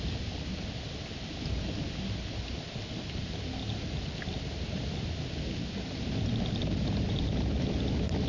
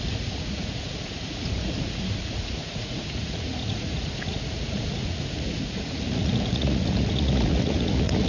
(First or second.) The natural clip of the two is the first